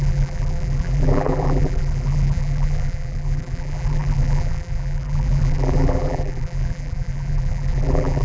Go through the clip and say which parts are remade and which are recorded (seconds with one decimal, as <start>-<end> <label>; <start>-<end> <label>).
0.0-8.2 remade